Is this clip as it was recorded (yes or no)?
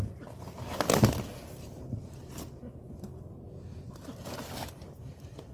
yes